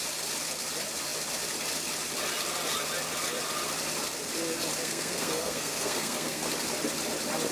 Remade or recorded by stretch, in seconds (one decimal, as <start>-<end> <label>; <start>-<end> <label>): 0.0-4.8 recorded; 4.8-6.5 remade; 6.5-7.5 recorded